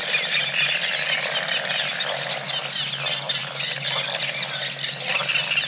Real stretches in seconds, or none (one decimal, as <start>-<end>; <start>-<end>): 0.0-5.7